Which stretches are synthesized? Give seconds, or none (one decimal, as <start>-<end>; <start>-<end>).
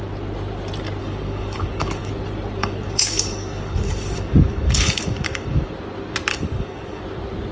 1.0-2.1; 2.6-5.7; 6.3-7.0